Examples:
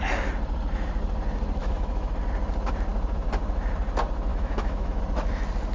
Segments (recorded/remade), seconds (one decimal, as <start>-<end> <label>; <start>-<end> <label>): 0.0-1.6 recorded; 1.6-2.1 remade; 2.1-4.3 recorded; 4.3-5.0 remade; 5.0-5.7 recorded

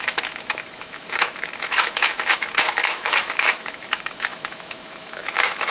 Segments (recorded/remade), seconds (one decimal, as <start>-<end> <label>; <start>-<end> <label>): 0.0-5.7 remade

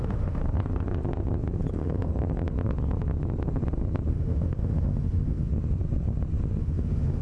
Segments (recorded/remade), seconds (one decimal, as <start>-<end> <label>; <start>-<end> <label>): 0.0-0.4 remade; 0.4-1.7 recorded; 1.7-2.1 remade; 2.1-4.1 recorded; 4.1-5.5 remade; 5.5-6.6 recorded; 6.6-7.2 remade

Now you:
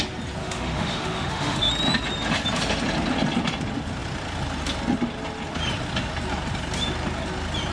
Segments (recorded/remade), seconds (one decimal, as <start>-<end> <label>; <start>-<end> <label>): 0.0-0.4 recorded; 0.4-1.7 remade; 1.7-7.7 recorded

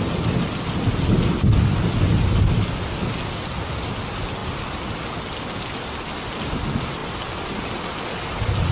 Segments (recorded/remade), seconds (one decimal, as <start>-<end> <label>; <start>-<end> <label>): 0.0-8.7 recorded